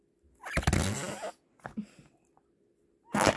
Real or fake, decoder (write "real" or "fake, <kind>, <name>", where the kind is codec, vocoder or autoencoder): real